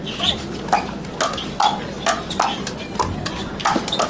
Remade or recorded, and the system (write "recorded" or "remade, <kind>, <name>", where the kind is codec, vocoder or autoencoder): recorded